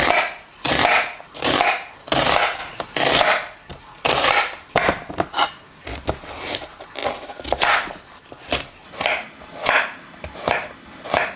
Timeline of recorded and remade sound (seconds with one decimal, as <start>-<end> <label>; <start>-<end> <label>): 0.0-2.6 recorded; 2.6-3.2 remade; 3.2-11.4 recorded